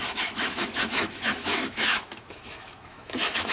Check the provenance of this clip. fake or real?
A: fake